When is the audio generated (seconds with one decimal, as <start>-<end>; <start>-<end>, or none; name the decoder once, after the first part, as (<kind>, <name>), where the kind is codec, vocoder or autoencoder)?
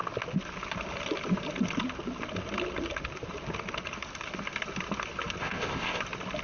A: 5.4-6.0 (codec, ZipCodec)